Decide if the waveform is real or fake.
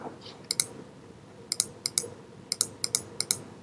real